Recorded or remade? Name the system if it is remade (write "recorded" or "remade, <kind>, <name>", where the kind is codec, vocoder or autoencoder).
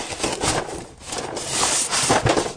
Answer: remade, vocoder, BigVGAN v2